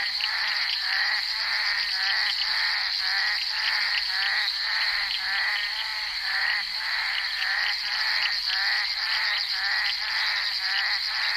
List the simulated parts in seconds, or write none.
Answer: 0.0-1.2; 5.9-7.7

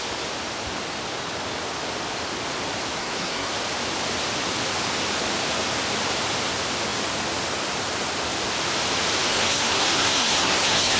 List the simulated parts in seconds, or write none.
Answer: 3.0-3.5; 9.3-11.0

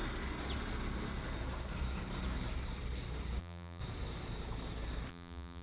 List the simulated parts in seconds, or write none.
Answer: 3.4-3.8; 5.1-5.6

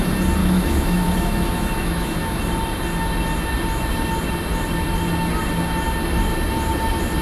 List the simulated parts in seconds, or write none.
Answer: 0.4-2.4

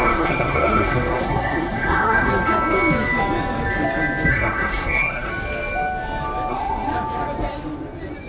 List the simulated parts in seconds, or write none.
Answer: 0.0-2.3; 4.3-5.3; 6.5-6.9

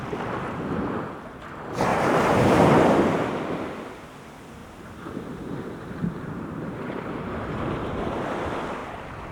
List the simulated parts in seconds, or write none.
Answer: 1.9-2.7; 4.6-8.0

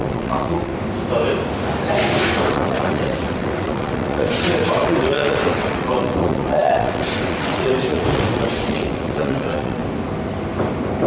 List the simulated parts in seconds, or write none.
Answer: 0.0-0.7; 2.5-9.8

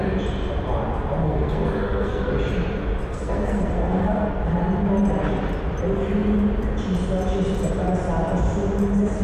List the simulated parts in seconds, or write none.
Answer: 1.2-2.3; 3.1-4.4